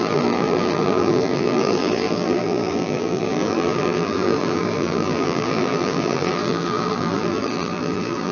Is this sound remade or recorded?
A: remade